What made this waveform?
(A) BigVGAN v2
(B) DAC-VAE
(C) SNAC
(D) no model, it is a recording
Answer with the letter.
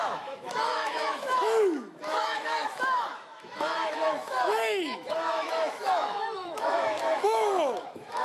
B